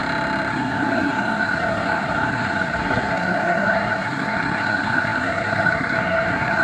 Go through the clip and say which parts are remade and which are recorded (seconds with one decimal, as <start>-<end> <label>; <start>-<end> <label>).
0.0-0.5 recorded; 0.5-6.6 remade